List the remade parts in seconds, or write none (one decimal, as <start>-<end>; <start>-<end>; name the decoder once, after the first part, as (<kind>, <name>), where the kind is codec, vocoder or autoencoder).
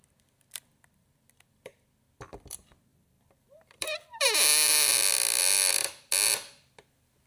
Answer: 2.9-4.4 (vocoder, BigVGAN v2)